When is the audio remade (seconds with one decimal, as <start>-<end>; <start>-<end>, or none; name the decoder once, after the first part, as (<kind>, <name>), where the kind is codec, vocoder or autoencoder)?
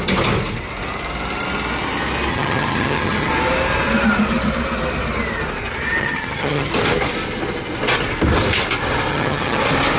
2.3-3.3 (vocoder, HiFi-GAN); 6.0-6.7; 9.1-9.6